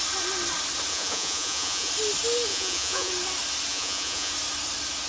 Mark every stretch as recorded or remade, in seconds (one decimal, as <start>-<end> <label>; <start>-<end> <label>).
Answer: 0.0-0.9 recorded; 0.9-1.9 remade; 1.9-2.5 recorded; 2.5-3.1 remade; 3.1-3.7 recorded; 3.7-4.3 remade; 4.3-5.1 recorded